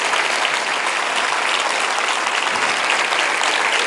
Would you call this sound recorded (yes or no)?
yes